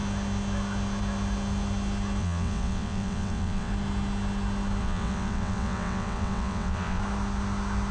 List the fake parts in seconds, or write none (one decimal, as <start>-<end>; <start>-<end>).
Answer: 2.2-3.7; 4.8-7.0